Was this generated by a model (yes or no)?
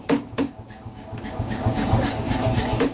yes